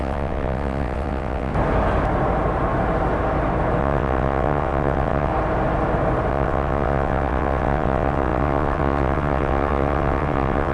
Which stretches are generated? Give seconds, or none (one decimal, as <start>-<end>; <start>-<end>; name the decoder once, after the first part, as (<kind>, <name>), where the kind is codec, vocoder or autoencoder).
0.0-1.5 (vocoder, WaveNeXt); 3.8-5.3; 6.3-10.7